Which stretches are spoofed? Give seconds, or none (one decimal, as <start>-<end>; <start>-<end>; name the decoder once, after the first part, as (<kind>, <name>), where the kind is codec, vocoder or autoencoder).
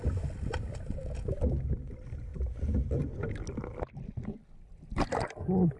none